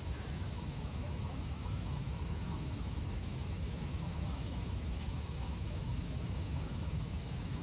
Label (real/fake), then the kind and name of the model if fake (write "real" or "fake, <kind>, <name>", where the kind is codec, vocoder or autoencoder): fake, autoencoder, DAC-VAE